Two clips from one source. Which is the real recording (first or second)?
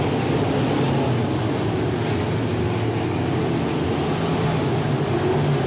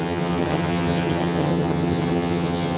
first